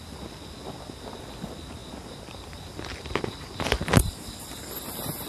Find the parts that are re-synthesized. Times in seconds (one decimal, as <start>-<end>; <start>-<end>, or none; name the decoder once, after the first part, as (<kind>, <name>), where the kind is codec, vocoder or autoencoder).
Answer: 0.0-5.3 (vocoder, BigVGAN v2)